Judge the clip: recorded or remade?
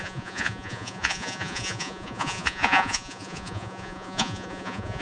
remade